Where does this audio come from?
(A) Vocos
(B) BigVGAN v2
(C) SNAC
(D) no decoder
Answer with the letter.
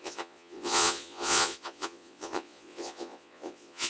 A